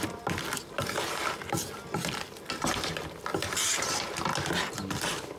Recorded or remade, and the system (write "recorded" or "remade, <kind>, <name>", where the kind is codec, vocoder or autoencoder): recorded